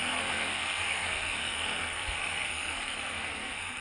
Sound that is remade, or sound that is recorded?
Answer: remade